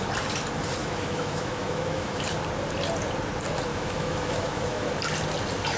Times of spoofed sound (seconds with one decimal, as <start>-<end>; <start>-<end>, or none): 0.8-2.2; 3.7-4.9